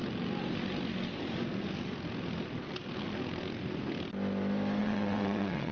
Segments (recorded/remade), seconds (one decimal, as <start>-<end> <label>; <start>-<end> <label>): 0.0-4.8 recorded; 4.8-5.7 remade